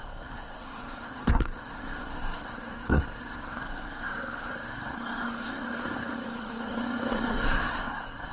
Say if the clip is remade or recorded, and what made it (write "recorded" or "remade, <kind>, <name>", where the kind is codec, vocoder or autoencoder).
remade, codec, SNAC